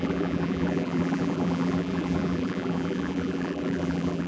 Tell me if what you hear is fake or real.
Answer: fake